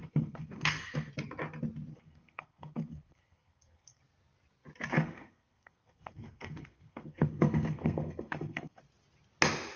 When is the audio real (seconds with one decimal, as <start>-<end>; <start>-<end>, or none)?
1.1-1.9; 4.0-4.9; 8.8-9.8